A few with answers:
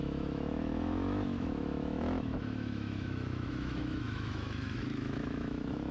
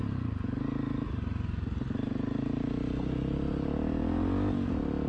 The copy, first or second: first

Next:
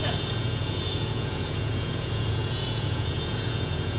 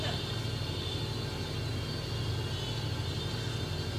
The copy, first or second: first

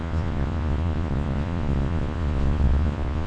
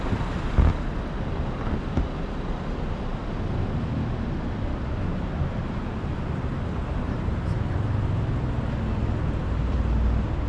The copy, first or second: first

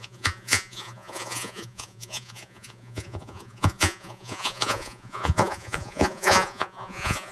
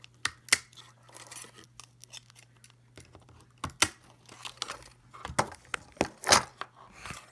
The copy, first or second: first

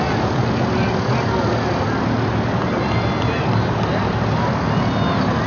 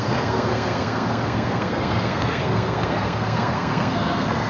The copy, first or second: second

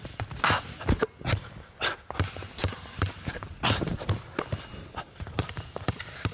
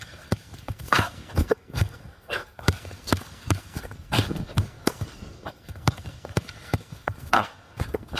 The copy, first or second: second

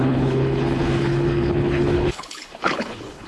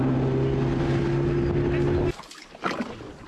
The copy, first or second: first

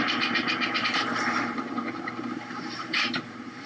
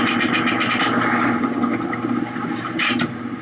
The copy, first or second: first